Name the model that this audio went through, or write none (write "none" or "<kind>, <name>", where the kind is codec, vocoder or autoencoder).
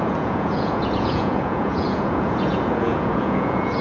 vocoder, Vocos